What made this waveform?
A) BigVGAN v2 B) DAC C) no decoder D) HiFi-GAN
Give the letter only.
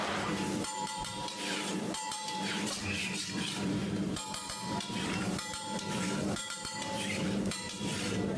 A